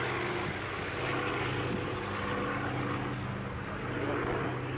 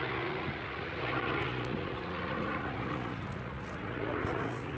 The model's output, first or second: second